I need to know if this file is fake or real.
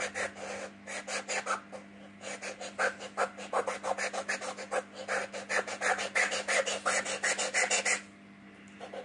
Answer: real